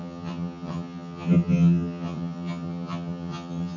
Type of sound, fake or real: fake